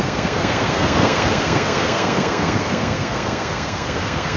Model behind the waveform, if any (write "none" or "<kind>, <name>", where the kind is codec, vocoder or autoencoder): codec, SNAC